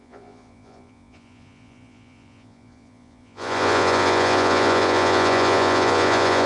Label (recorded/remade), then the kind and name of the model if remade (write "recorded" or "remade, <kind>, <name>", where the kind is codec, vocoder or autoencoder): remade, vocoder, Vocos